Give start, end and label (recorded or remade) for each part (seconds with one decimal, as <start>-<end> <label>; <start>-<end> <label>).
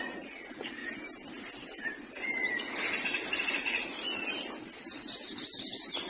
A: 0.0-0.8 remade; 0.8-3.5 recorded; 3.5-3.9 remade; 3.9-6.1 recorded